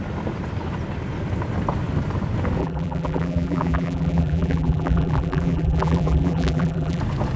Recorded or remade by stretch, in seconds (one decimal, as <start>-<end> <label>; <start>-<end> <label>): 0.0-2.6 recorded; 2.6-7.0 remade; 7.0-7.4 recorded